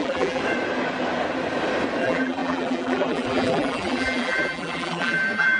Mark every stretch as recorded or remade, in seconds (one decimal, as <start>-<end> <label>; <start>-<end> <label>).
0.0-0.4 remade; 0.4-2.0 recorded; 2.0-5.6 remade